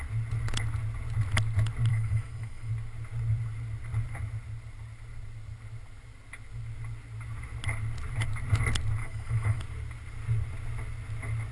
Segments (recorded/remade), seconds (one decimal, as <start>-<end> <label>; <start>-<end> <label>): 0.0-1.9 recorded; 1.9-2.7 remade; 2.7-9.0 recorded; 9.0-9.6 remade; 9.6-11.5 recorded